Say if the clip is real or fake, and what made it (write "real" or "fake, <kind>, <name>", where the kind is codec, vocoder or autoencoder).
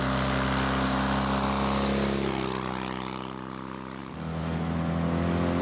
real